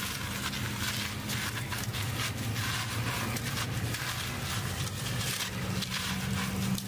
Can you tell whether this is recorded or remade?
recorded